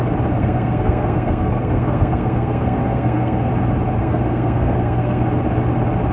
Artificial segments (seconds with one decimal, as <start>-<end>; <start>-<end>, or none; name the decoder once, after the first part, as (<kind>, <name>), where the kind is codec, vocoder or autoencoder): 0.4-3.5 (codec, SNAC); 4.0-5.2